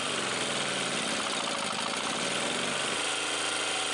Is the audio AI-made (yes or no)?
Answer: no